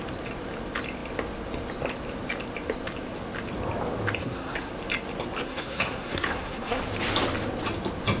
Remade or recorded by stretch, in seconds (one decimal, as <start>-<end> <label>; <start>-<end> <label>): 0.0-4.2 recorded; 4.2-4.7 remade; 4.7-5.4 recorded; 5.4-6.8 remade; 6.8-8.2 recorded